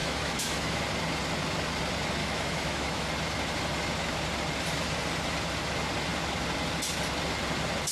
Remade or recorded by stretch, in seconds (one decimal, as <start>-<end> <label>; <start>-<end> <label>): 0.0-0.8 remade; 0.8-2.2 recorded; 2.2-3.1 remade; 3.1-7.9 recorded